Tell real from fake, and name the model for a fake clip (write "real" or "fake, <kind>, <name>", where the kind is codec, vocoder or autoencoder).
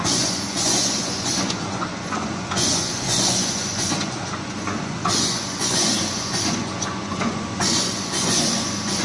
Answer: fake, vocoder, Vocos